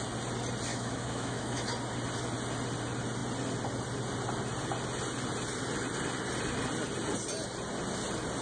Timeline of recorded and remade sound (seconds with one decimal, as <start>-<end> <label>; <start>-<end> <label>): 0.0-0.7 recorded; 0.7-1.7 remade; 1.7-8.4 recorded